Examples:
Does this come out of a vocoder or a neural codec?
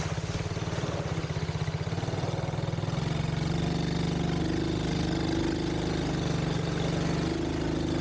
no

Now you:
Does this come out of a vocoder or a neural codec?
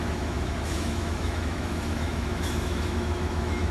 yes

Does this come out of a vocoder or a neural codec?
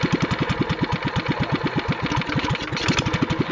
no